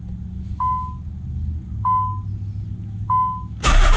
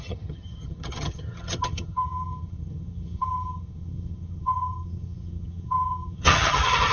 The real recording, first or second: first